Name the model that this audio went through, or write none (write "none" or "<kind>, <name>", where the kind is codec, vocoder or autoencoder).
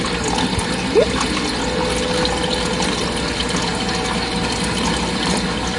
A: none